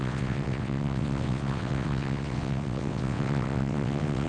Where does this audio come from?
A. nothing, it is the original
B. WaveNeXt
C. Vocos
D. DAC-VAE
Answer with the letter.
B